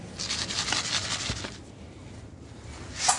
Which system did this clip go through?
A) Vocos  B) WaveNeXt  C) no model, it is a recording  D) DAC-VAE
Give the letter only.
C